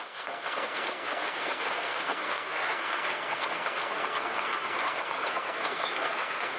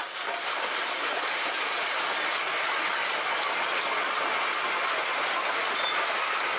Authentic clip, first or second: second